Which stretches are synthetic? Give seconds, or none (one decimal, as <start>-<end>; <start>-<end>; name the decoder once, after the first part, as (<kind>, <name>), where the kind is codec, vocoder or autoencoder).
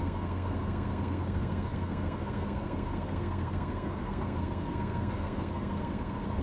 0.0-6.4 (codec, SNAC)